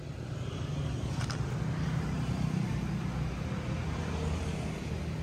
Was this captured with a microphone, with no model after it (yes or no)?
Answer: yes